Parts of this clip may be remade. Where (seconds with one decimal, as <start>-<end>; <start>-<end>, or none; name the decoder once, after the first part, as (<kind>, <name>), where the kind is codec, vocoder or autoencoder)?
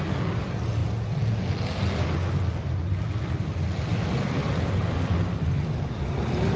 none